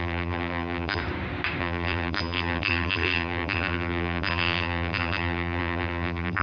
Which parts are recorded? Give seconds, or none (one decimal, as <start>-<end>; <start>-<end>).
1.0-1.6